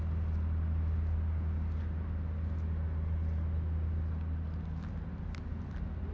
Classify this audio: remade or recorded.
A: recorded